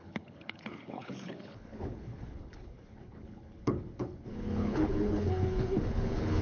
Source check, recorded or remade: remade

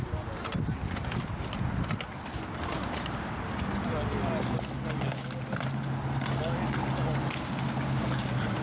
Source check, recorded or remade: recorded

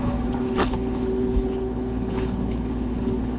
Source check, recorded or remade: remade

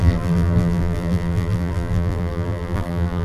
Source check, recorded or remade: remade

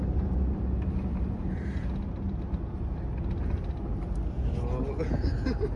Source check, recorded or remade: recorded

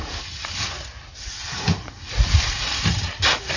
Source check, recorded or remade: recorded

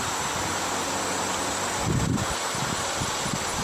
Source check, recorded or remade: recorded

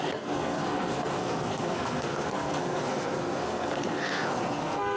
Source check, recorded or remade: remade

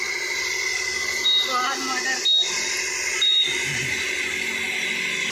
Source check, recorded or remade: recorded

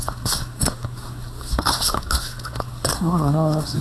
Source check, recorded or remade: remade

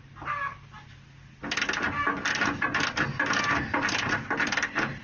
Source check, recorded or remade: recorded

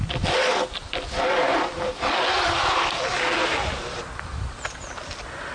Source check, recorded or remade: recorded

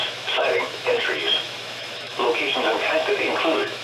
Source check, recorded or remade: remade